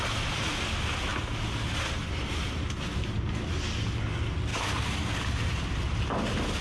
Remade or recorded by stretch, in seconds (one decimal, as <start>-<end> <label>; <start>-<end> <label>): 0.0-4.5 recorded; 4.5-6.0 remade; 6.0-6.6 recorded